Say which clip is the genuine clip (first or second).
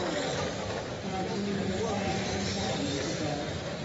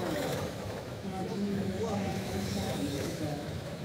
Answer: first